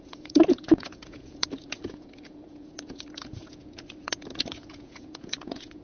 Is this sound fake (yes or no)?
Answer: yes